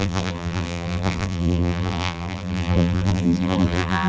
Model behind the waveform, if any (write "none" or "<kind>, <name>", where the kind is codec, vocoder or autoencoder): vocoder, BigVGAN v2